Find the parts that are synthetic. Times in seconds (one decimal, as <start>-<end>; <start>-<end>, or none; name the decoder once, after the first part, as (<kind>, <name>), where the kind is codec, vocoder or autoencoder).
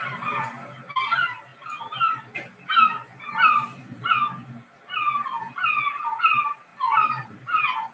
none